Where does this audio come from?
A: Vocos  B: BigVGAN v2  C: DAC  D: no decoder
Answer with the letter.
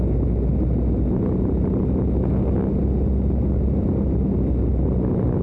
D